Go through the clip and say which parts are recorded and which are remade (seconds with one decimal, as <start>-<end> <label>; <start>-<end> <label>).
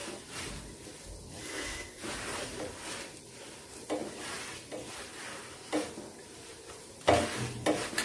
0.0-1.4 recorded; 1.4-2.0 remade; 2.0-8.0 recorded